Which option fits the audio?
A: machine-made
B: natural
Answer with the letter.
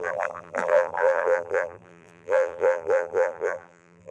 A